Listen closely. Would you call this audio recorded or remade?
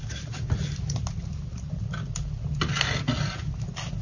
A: recorded